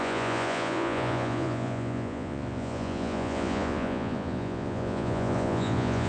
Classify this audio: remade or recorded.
remade